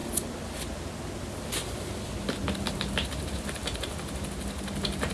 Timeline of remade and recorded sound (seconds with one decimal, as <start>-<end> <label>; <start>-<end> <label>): 0.0-5.1 recorded